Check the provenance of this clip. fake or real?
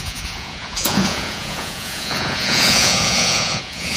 fake